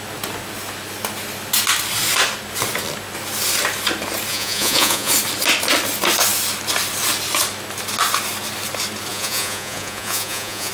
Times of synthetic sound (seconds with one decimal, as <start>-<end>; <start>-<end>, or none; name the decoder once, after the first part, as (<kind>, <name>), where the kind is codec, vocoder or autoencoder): 4.3-5.1 (vocoder, Vocos); 9.1-10.7